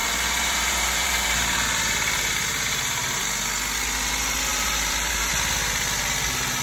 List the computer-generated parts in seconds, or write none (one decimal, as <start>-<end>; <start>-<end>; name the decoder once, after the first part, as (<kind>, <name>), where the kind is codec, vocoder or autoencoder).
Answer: 0.0-3.2 (vocoder, BigVGAN v2); 4.5-5.3